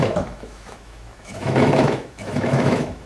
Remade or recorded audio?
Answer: remade